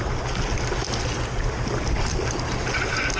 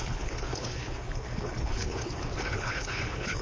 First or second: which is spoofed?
second